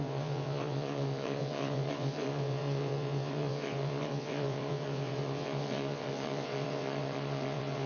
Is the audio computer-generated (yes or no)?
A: yes